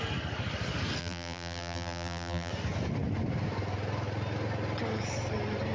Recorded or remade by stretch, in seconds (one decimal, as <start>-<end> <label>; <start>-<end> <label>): 0.0-1.0 recorded; 1.0-2.5 remade; 2.5-5.7 recorded